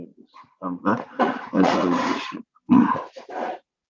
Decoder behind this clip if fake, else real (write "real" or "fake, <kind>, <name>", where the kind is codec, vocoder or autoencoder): fake, vocoder, Vocos